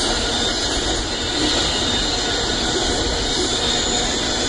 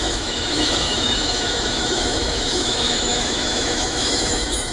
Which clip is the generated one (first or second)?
second